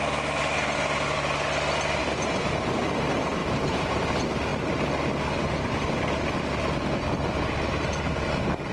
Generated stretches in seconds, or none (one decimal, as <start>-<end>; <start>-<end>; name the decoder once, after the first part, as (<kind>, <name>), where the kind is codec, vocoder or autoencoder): 2.0-2.8 (vocoder, BigVGAN v2); 3.4-4.1